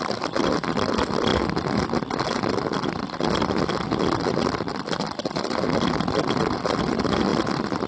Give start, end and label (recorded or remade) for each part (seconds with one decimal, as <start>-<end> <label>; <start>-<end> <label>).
0.0-7.9 recorded